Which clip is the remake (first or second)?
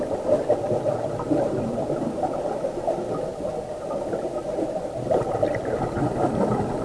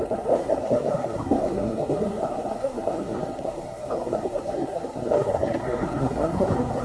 second